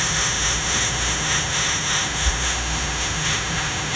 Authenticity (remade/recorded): remade